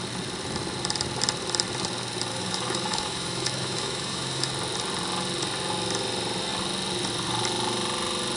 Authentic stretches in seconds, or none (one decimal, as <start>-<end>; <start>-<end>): 0.0-2.3; 4.5-8.4